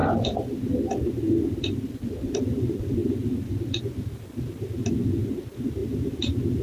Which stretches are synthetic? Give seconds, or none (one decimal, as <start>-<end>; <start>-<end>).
0.0-2.3; 3.0-3.8